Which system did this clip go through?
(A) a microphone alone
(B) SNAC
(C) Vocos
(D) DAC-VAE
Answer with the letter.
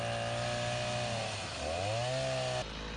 A